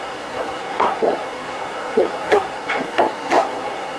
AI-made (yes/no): yes